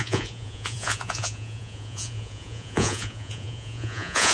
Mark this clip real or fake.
fake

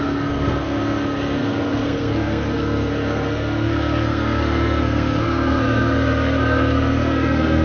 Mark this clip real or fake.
fake